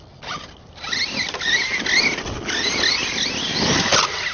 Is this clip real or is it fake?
real